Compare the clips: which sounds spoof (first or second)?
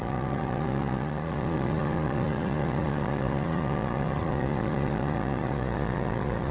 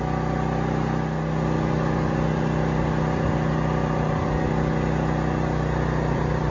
first